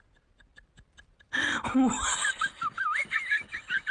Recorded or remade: recorded